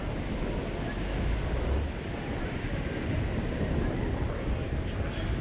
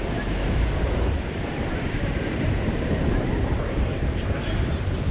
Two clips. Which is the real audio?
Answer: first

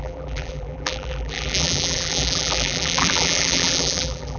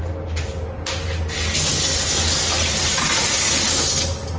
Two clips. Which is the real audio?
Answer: second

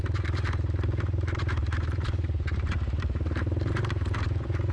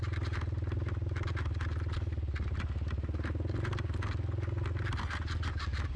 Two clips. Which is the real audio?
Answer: second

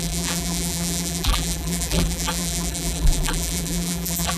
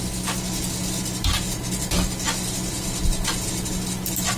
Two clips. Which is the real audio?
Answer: second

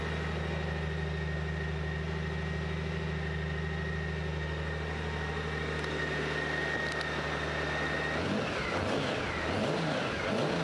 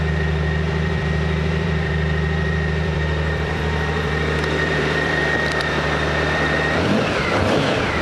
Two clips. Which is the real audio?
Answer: first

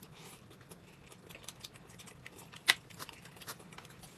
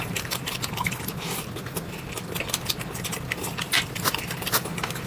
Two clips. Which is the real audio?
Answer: second